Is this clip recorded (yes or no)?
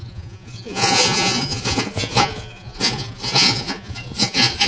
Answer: no